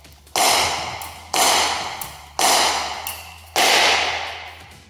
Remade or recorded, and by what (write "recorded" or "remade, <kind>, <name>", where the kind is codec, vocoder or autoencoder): recorded